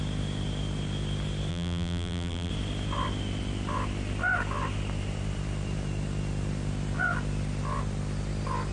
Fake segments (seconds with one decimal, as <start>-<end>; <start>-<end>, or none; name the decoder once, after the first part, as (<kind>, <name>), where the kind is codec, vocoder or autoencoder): 1.5-2.5 (vocoder, BigVGAN v2)